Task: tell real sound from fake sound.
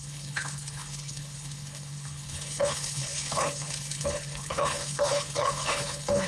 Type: fake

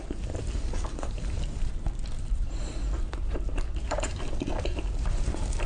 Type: fake